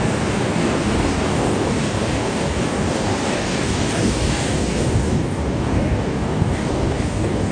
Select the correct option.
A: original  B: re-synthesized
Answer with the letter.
B